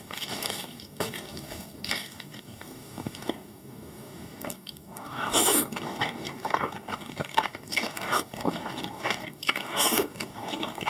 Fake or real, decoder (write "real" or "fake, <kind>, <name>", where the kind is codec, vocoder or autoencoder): fake, codec, DAC